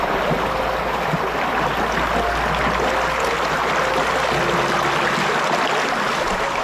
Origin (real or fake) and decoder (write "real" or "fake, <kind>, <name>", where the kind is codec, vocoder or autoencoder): real